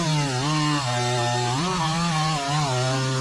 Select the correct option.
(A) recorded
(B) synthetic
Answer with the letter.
A